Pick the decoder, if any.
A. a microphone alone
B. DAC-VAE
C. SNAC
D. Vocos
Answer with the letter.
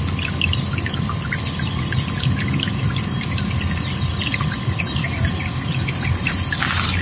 A